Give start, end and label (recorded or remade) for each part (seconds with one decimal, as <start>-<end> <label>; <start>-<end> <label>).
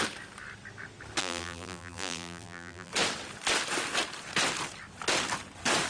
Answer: 0.0-1.2 recorded; 1.2-2.9 remade; 2.9-5.9 recorded